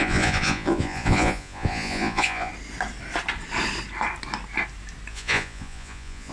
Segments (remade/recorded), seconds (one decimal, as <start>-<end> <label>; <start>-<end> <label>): 0.0-2.5 remade; 2.5-5.1 recorded; 5.1-6.3 remade